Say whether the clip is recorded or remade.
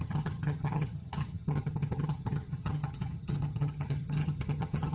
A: remade